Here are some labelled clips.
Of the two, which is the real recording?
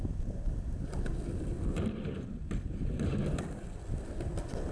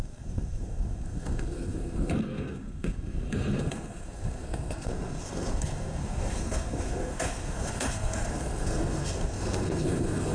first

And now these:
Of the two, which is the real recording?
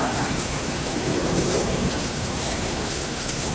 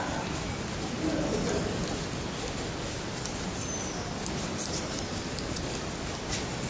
second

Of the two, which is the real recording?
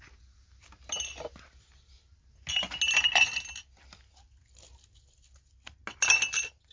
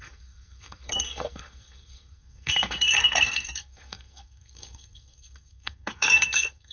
first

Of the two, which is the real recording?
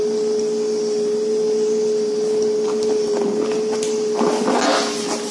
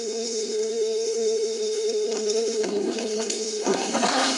first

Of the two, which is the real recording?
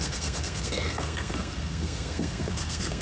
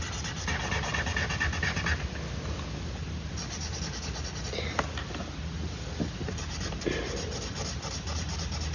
second